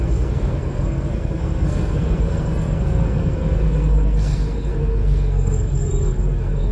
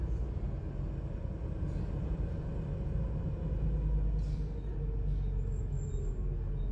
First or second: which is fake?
first